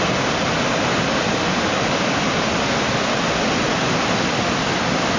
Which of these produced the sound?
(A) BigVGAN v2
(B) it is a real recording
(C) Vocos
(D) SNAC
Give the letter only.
B